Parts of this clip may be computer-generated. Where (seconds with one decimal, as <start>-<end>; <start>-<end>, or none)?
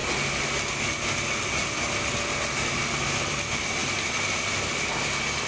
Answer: none